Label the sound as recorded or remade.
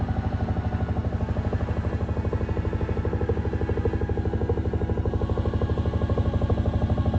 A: recorded